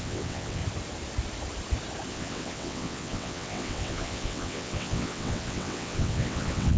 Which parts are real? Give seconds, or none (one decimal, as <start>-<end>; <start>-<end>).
0.6-2.1